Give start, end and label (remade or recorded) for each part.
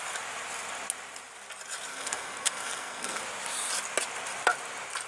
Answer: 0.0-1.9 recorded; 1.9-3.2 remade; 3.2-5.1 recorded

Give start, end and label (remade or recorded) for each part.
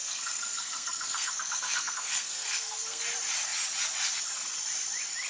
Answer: 0.0-3.0 remade; 3.0-5.3 recorded